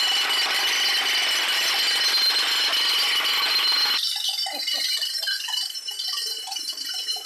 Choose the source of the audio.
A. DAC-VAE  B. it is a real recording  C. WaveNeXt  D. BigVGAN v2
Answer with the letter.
B